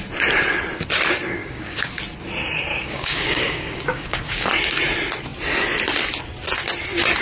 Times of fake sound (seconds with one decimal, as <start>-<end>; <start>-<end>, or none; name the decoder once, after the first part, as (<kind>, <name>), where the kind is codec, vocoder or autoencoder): 1.4-2.0 (codec, DAC); 2.7-4.5